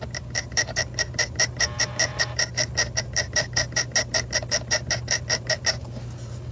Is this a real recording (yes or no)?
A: yes